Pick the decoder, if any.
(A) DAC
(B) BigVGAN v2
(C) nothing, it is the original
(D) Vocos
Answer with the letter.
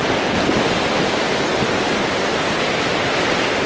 C